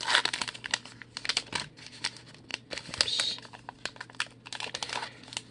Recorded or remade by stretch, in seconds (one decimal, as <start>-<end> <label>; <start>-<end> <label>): 0.0-5.5 recorded